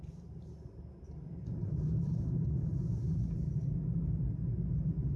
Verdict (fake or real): real